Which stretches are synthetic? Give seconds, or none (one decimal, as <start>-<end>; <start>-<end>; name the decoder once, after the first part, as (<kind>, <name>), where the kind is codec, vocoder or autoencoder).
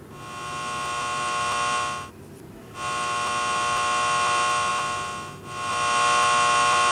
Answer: none